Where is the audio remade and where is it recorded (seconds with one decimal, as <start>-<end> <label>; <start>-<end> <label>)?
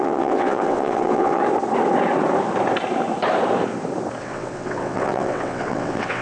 0.0-1.4 remade; 1.4-4.2 recorded; 4.2-6.2 remade